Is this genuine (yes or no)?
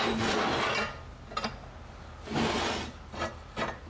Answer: yes